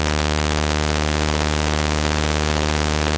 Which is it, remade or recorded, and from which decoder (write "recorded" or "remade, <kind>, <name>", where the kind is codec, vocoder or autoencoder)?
recorded